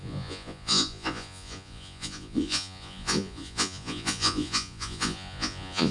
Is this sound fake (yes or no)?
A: yes